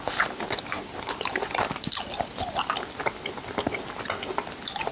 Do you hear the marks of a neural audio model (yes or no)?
no